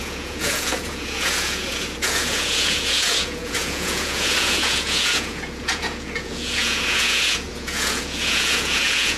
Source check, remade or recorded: remade